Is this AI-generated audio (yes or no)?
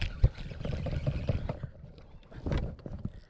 no